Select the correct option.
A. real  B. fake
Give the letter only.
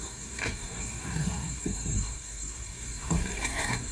B